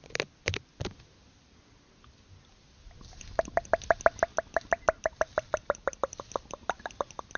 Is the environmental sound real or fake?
real